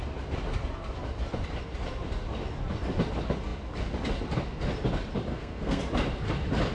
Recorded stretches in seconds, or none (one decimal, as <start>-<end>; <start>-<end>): 0.0-5.3; 5.8-6.7